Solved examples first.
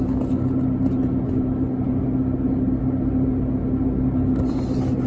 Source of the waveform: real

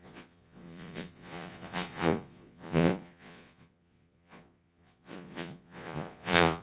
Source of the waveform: fake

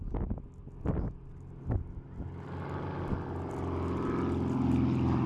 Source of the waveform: real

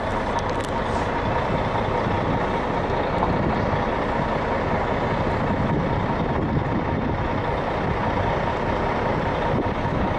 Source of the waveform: real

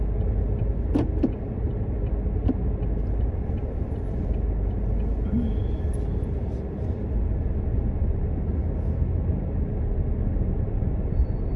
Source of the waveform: real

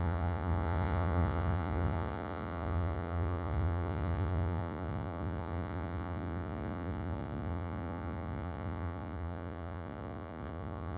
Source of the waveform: fake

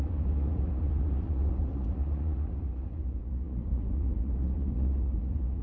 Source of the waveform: fake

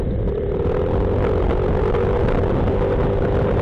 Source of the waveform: real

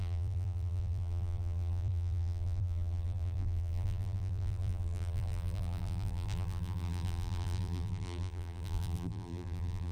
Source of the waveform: fake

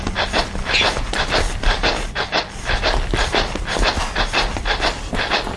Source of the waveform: real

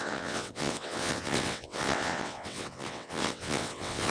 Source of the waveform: fake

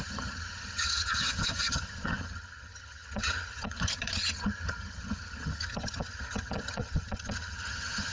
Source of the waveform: fake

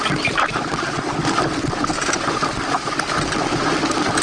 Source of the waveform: real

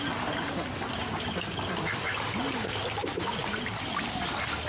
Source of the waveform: fake